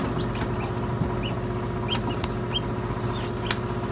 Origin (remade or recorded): recorded